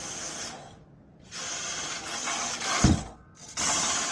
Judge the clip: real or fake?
real